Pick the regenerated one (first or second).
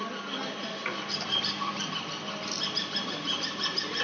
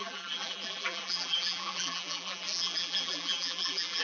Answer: second